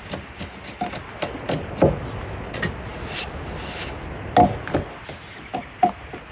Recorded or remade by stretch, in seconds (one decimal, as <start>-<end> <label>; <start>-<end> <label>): 0.0-6.3 recorded